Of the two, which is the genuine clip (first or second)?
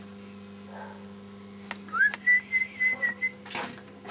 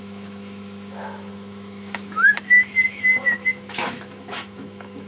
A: first